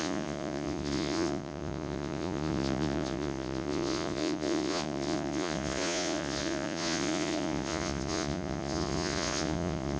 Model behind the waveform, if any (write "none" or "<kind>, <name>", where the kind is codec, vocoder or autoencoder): vocoder, Vocos